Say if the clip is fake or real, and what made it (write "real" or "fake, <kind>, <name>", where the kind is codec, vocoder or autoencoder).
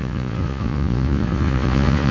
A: fake, vocoder, Vocos